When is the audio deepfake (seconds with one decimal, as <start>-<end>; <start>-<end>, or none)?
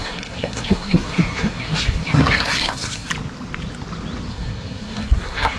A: 0.0-3.1; 4.3-5.6